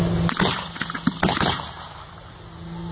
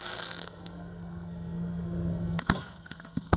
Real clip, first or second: first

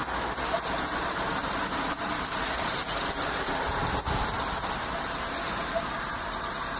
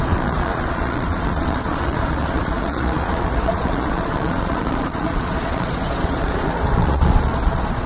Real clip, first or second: first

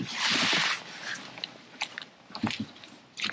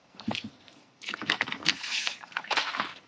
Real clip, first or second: first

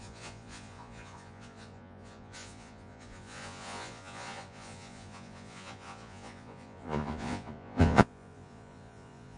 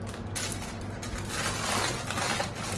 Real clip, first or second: second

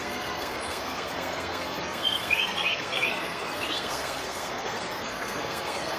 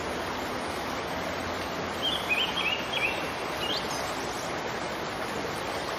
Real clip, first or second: second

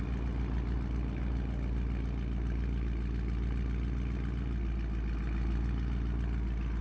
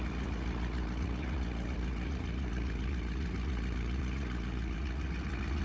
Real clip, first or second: first